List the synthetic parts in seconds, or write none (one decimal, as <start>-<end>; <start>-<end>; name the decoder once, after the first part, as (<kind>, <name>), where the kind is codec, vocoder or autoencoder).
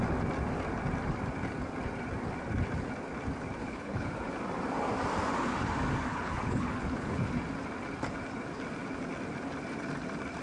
3.6-4.2 (codec, HILCodec); 6.1-7.3